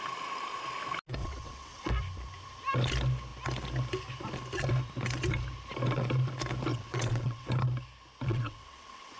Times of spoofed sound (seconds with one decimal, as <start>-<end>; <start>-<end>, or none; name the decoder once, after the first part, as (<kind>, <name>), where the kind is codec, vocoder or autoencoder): 1.2-1.9 (vocoder, WaveNeXt); 6.7-7.5; 8.3-9.2